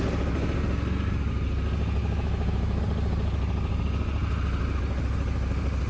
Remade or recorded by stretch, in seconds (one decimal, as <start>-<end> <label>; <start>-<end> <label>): 0.0-2.0 recorded; 2.0-2.8 remade; 2.8-5.9 recorded